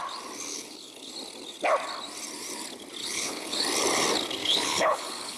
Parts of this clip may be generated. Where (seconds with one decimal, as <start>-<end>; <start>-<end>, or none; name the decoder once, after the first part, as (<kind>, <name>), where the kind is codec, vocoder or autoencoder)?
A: 0.5-1.1 (codec, HILCodec); 3.0-3.6; 4.4-5.4